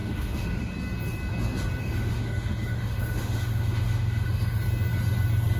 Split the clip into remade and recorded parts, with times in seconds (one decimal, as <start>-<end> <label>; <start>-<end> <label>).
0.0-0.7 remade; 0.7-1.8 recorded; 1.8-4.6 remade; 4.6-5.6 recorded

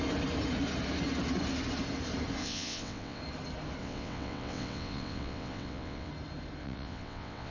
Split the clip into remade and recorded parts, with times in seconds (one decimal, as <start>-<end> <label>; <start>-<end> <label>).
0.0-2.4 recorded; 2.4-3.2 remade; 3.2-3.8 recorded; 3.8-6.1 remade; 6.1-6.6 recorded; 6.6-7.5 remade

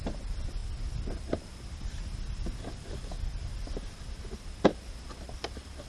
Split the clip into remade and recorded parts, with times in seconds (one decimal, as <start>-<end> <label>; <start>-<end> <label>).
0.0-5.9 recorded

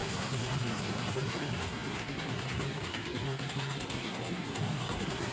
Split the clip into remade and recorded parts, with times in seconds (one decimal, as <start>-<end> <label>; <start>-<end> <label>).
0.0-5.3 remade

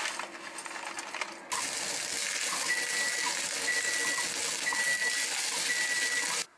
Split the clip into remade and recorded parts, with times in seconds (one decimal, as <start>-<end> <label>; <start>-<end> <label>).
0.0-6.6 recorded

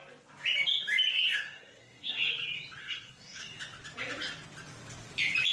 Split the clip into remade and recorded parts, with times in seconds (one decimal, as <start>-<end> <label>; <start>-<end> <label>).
0.0-1.1 recorded; 1.1-2.3 remade; 2.3-2.8 recorded; 2.8-3.4 remade; 3.4-5.5 recorded

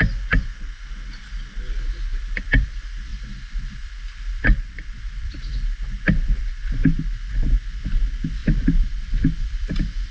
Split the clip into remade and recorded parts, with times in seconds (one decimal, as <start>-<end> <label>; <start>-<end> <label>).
0.0-2.1 recorded; 2.1-2.7 remade; 2.7-3.1 recorded; 3.1-6.4 remade; 6.4-8.4 recorded; 8.4-10.1 remade

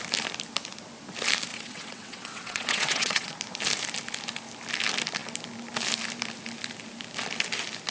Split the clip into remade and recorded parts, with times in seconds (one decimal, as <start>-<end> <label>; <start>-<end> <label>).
0.0-1.5 recorded; 1.5-3.3 remade; 3.3-7.9 recorded